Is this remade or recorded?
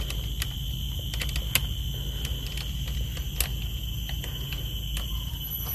recorded